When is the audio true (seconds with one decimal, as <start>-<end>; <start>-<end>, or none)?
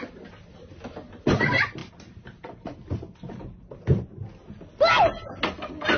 0.0-6.0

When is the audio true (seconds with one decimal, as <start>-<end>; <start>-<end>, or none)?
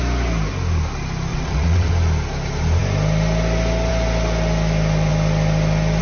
0.0-1.3; 1.9-6.0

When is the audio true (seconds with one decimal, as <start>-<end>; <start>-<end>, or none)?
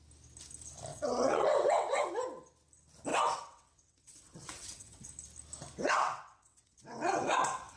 0.0-0.9; 2.1-3.1; 5.1-5.8